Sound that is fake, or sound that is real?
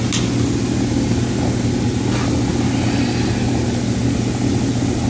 real